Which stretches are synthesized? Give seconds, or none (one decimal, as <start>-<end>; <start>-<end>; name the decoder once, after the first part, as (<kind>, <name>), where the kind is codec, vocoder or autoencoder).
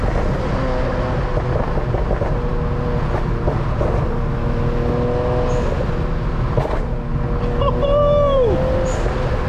none